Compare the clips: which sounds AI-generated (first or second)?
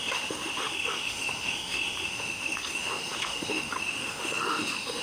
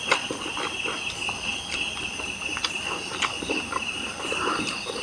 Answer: first